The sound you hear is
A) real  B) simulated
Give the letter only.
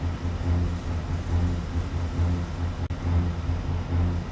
A